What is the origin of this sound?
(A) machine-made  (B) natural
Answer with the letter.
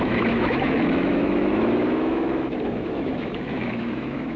A